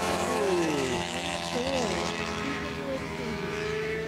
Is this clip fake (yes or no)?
yes